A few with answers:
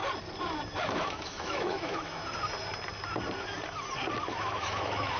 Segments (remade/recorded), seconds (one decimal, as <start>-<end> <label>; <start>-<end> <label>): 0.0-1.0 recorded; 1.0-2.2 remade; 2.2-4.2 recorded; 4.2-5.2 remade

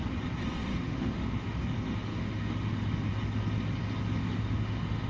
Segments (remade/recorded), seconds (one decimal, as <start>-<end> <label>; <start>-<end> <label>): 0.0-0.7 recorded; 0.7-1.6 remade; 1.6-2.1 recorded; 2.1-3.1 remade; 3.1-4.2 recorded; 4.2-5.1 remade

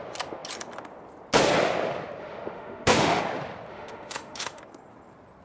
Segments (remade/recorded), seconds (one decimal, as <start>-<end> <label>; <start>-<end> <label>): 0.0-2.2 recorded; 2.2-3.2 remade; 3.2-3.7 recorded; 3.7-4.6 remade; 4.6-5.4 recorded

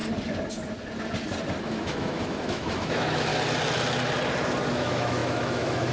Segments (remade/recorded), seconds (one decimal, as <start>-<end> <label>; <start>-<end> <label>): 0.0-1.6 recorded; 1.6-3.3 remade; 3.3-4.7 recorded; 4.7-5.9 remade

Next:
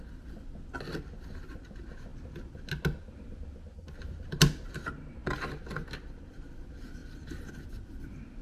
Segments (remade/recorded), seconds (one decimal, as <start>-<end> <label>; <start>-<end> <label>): 0.0-8.4 recorded

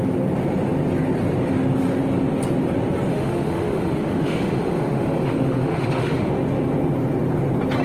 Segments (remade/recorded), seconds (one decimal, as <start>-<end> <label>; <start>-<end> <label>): 0.0-3.1 recorded; 3.1-6.3 remade; 6.3-7.8 recorded